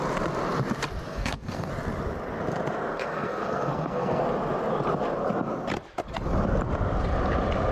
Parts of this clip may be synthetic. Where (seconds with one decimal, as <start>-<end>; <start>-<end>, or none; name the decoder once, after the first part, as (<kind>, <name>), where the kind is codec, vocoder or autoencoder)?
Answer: 1.1-1.7 (codec, SNAC); 2.9-4.2